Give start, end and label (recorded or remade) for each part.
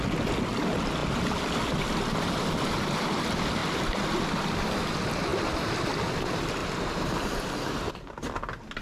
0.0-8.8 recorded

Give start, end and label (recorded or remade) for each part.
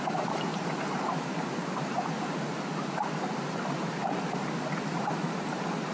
0.0-4.0 remade; 4.0-4.6 recorded; 4.6-5.9 remade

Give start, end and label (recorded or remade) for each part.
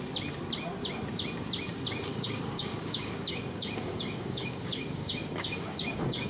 0.0-2.1 recorded; 2.1-6.3 remade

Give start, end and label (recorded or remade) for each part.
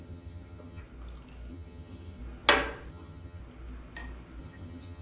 0.0-0.8 remade; 0.8-1.5 recorded; 1.5-2.2 remade; 2.2-2.9 recorded; 2.9-3.4 remade; 3.4-4.4 recorded; 4.4-5.0 remade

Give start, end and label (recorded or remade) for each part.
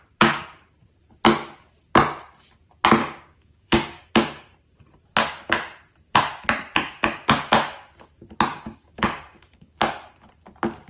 0.0-3.0 recorded; 3.0-4.1 remade; 4.1-8.5 recorded; 8.5-9.9 remade; 9.9-10.9 recorded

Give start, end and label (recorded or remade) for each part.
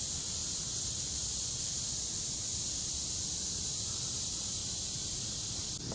0.0-5.9 recorded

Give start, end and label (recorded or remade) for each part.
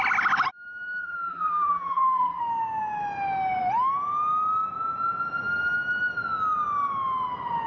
0.0-1.0 recorded; 1.0-2.4 remade; 2.4-7.7 recorded